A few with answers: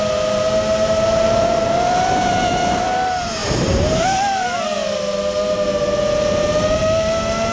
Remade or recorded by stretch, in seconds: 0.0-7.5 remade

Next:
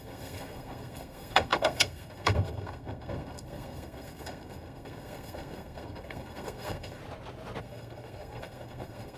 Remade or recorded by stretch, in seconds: 0.0-7.0 remade; 7.0-7.6 recorded; 7.6-9.2 remade

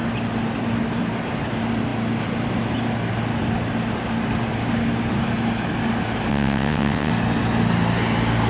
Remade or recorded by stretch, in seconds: 0.0-6.3 recorded; 6.3-7.1 remade; 7.1-8.5 recorded

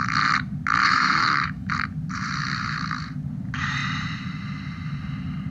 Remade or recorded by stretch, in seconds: 0.0-0.8 recorded; 0.8-1.7 remade; 1.7-5.5 recorded